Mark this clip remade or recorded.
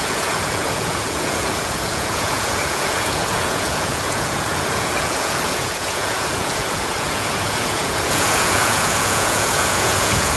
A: remade